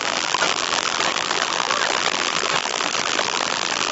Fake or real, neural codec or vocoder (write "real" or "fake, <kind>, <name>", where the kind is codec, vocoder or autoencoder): fake, vocoder, BigVGAN v2